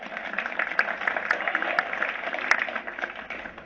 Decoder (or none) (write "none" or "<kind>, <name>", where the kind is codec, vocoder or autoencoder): none